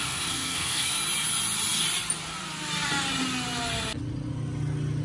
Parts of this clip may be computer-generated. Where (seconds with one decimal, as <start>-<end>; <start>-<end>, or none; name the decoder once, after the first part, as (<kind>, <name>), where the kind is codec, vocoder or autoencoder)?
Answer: 0.0-1.0 (codec, SNAC)